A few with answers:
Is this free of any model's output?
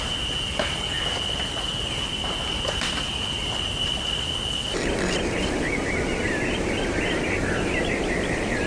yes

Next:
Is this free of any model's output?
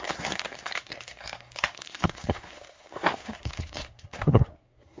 no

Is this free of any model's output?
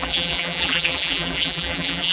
no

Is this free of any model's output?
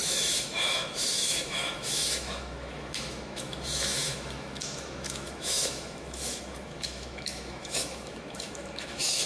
no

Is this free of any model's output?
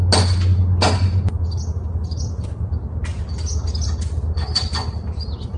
yes